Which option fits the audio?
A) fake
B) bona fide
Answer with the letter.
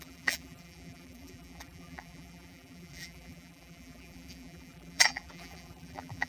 A